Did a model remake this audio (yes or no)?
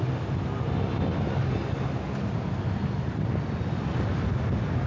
no